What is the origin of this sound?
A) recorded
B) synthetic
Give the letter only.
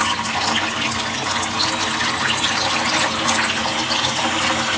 A